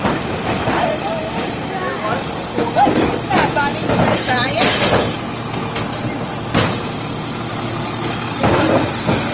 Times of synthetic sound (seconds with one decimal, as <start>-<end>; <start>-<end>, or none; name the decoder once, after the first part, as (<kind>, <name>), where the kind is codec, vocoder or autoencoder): 7.5-8.6 (codec, DAC)